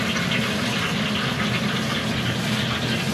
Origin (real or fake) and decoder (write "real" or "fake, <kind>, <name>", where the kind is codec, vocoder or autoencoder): real